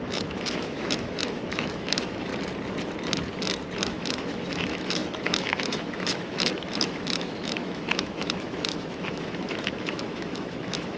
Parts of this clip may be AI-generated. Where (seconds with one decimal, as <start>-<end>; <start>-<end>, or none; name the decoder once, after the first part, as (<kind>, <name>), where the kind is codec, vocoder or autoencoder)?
0.0-2.3 (autoencoder, DAC-VAE); 3.8-11.0

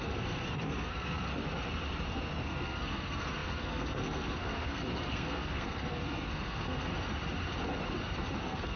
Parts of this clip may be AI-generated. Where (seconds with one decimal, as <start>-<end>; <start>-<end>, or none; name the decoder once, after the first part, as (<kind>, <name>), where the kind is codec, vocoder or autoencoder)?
0.0-1.3 (codec, SNAC); 2.1-6.9; 8.4-8.8

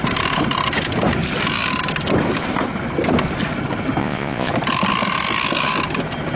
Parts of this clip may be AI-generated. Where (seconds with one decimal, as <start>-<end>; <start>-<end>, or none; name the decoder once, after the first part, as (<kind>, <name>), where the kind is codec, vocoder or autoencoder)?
4.0-4.5 (vocoder, Vocos)